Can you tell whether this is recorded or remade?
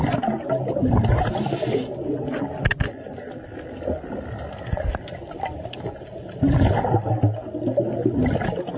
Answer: recorded